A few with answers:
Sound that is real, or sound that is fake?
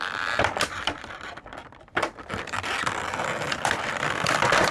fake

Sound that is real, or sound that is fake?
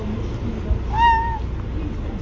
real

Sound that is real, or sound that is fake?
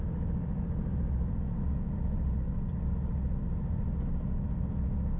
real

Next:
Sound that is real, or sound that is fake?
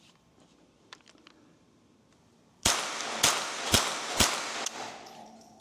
fake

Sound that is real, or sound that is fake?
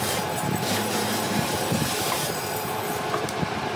fake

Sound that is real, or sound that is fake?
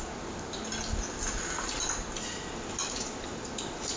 real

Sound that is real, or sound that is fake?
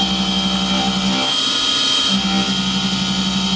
real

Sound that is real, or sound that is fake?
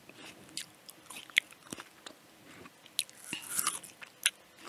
real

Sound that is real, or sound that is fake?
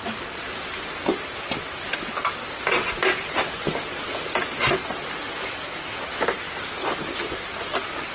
real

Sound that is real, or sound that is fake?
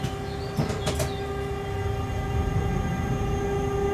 real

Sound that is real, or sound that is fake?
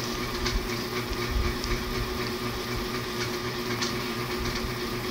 fake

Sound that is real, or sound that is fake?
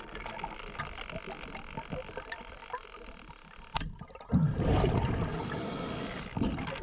real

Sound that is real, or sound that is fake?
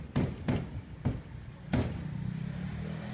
real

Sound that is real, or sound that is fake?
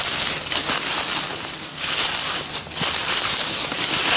real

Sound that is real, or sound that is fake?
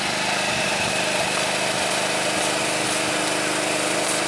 real